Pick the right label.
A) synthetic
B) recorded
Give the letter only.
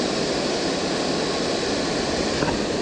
B